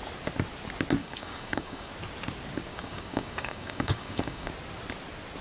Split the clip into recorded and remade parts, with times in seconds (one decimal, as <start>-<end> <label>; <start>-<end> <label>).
0.0-1.0 recorded; 1.0-1.9 remade; 1.9-2.7 recorded; 2.7-4.5 remade; 4.5-5.4 recorded